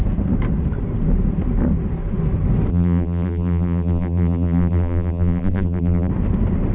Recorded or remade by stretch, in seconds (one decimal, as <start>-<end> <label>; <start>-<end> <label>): 0.0-2.7 recorded; 2.7-6.1 remade; 6.1-6.7 recorded